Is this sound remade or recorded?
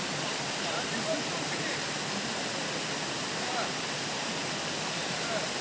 recorded